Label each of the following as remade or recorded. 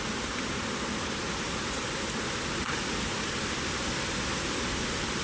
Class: recorded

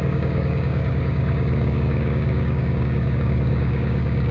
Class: remade